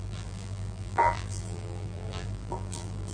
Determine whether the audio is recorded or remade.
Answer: remade